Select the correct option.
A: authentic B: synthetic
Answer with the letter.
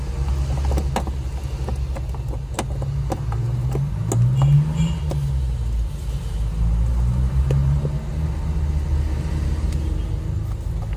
A